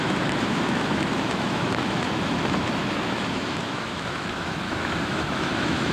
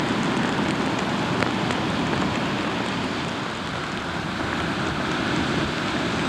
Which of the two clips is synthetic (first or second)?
first